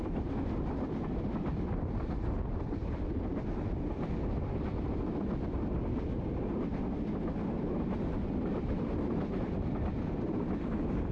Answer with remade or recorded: recorded